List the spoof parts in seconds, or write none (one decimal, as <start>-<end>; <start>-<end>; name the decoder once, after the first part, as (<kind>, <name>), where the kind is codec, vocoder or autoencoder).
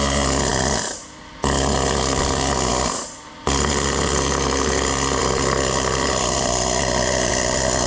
0.5-1.3 (vocoder, BigVGAN v2); 2.7-3.3; 5.2-7.3